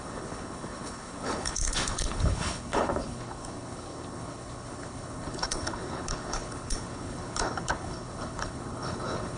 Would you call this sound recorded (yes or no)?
no